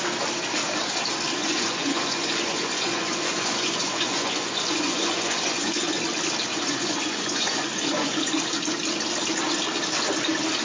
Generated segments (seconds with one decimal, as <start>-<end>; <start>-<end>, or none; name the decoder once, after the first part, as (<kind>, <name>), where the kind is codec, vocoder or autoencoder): 1.4-6.0 (vocoder, Vocos); 6.5-8.3